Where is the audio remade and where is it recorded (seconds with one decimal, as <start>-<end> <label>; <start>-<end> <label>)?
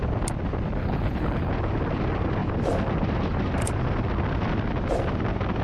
0.0-0.8 recorded; 0.8-1.5 remade; 1.5-5.6 recorded